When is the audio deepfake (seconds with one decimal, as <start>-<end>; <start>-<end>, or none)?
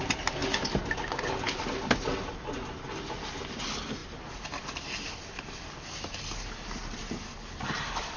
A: none